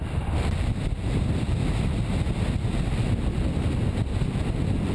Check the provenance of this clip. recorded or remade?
recorded